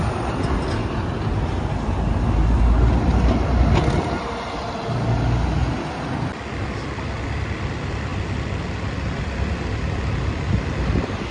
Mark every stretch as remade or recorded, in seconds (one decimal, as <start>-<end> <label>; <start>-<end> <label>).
0.0-11.3 recorded